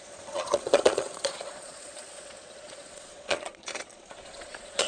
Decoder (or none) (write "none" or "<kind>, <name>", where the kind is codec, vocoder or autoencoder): vocoder, Vocos